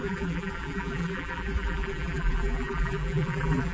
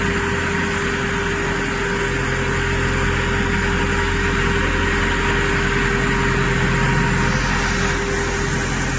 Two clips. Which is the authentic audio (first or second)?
second